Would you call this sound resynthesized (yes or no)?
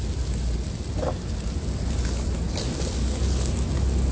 no